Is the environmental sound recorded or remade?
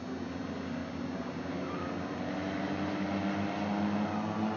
recorded